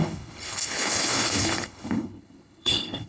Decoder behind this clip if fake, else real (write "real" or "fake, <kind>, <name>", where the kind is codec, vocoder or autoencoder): fake, codec, HILCodec